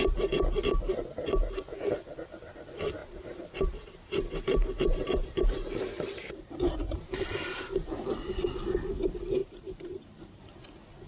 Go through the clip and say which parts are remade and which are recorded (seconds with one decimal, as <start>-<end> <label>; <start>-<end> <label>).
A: 0.0-3.0 recorded; 3.0-7.6 remade; 7.6-9.4 recorded; 9.4-10.4 remade; 10.4-11.1 recorded